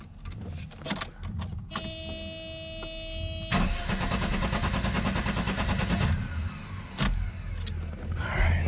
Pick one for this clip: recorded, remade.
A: recorded